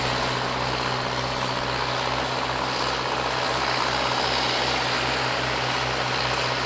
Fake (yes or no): no